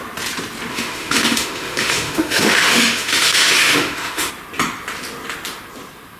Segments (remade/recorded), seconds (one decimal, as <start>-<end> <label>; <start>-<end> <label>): 0.0-0.7 recorded; 0.7-4.3 remade; 4.3-6.2 recorded